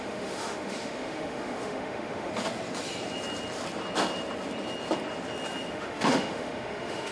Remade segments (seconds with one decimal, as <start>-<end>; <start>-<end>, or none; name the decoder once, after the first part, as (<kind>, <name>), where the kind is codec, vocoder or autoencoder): 0.0-2.3 (autoencoder, DAC-VAE); 5.7-7.1